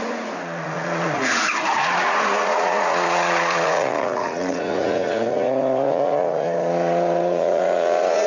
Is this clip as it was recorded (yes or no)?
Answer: no